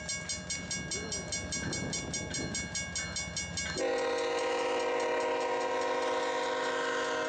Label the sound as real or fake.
real